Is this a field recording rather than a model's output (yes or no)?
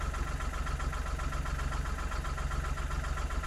yes